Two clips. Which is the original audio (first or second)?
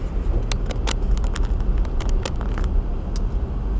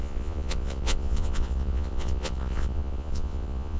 first